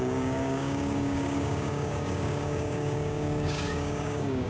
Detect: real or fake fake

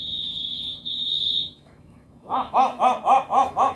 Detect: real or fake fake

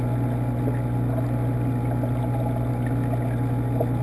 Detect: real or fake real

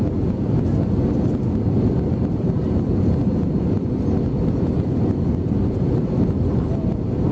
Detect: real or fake fake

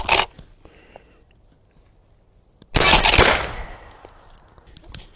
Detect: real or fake real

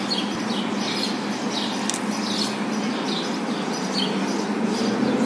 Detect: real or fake real